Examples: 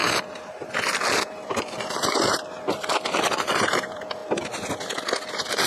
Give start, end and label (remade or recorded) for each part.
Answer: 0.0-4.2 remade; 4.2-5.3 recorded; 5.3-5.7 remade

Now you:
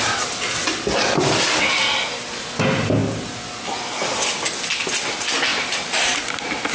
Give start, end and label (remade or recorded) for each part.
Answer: 0.0-5.5 recorded; 5.5-6.7 remade